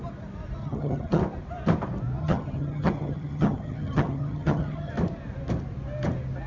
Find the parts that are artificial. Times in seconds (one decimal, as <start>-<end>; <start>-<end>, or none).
0.6-1.2; 2.2-4.9

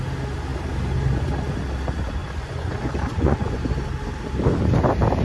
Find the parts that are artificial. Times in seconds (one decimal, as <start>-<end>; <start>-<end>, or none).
2.2-3.6

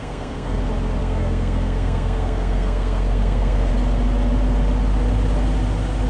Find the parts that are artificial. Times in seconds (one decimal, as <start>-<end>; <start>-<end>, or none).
0.0-0.6; 1.0-3.7